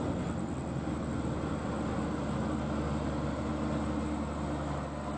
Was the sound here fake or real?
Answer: real